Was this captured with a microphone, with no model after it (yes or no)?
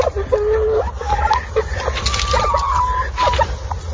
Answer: yes